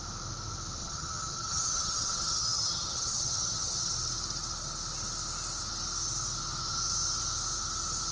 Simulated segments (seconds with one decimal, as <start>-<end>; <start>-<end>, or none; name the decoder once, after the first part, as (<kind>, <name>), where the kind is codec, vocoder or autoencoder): 0.8-3.9 (vocoder, HiFi-GAN)